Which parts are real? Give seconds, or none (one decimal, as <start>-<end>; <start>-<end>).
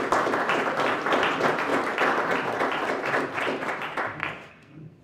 0.0-4.2